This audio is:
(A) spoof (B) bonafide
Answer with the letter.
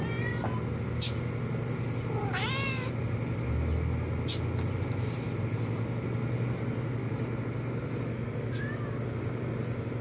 B